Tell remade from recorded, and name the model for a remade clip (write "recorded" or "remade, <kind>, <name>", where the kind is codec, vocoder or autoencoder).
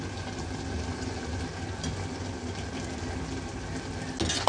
recorded